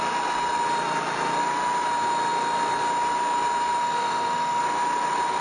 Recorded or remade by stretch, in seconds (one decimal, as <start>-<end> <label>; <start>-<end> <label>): 0.0-3.8 recorded; 3.8-4.6 remade; 4.6-5.4 recorded